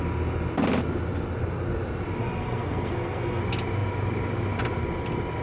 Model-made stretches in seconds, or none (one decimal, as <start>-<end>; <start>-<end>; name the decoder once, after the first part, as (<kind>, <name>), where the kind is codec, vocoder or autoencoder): 2.2-3.4 (codec, SNAC)